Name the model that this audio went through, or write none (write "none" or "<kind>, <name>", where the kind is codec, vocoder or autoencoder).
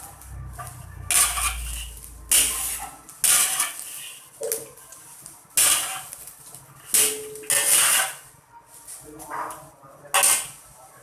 none